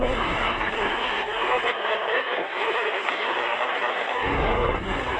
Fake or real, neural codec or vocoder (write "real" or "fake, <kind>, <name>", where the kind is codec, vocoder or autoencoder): fake, codec, SNAC